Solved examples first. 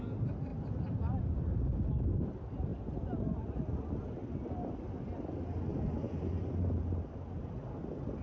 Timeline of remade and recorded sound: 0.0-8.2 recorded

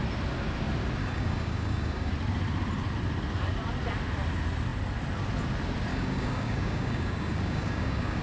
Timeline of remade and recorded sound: 0.0-1.0 recorded; 1.0-2.1 remade; 2.1-5.9 recorded; 5.9-8.2 remade

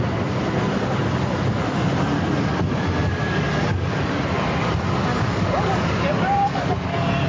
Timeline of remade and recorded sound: 0.0-3.1 recorded; 3.1-4.1 remade; 4.1-5.1 recorded; 5.1-7.3 remade